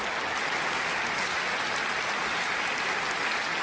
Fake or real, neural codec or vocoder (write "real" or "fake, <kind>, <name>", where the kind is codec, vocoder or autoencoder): real